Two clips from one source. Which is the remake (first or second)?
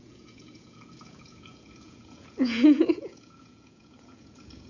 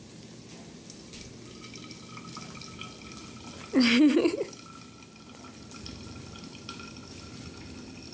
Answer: first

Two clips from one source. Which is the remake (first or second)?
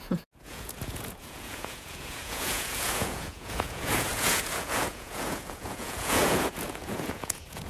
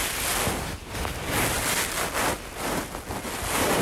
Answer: first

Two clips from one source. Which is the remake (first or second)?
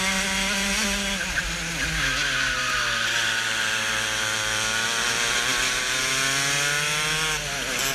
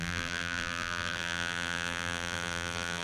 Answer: second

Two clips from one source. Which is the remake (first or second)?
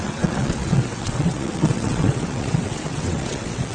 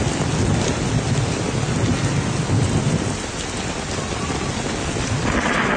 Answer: first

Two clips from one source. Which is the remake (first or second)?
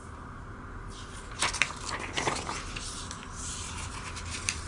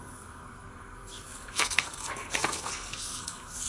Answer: second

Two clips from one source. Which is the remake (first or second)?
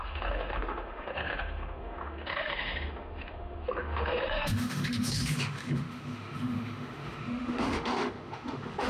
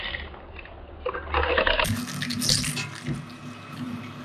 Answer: first